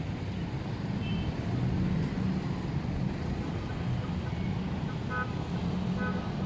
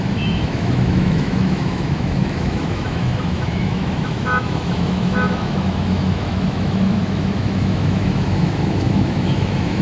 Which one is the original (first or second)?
first